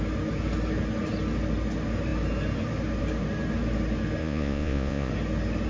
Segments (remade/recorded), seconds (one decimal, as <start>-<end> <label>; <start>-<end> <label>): 0.0-4.2 recorded; 4.2-5.1 remade; 5.1-5.7 recorded